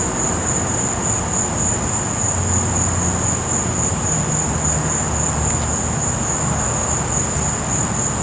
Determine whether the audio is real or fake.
real